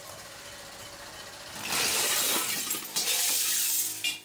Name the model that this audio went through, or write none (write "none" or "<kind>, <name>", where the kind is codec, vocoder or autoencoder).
none